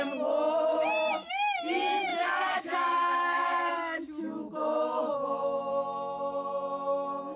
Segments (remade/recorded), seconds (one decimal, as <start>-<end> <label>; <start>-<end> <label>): 0.0-0.7 recorded; 0.7-1.3 remade; 1.3-2.1 recorded; 2.1-5.7 remade; 5.7-7.4 recorded